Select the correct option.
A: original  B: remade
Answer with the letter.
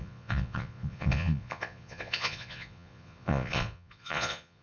B